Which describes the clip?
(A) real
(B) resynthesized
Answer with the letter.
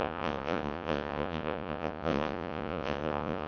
B